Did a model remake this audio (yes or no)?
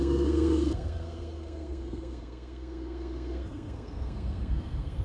yes